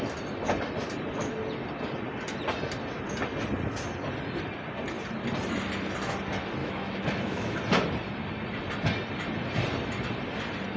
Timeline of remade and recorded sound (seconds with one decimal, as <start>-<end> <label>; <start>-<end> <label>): 0.0-6.6 recorded; 6.6-7.6 remade; 7.6-10.8 recorded